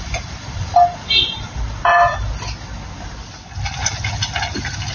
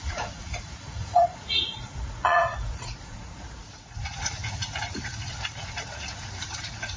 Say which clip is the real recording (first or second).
first